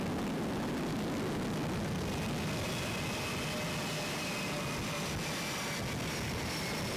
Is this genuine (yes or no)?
yes